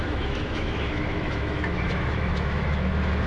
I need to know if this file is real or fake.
fake